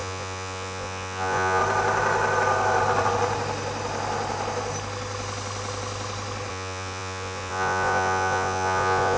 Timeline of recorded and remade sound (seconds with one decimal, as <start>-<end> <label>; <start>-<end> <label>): 0.0-1.6 remade; 1.6-6.5 recorded; 6.5-9.2 remade